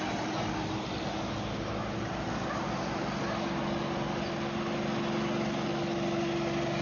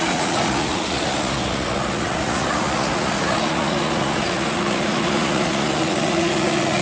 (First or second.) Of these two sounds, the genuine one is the first